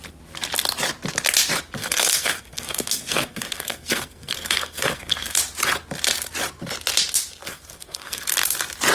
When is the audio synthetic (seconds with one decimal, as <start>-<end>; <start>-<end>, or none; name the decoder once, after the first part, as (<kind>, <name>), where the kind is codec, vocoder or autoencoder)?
1.8-5.4 (codec, SNAC); 7.4-8.3